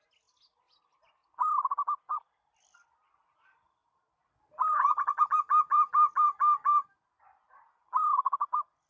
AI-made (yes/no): yes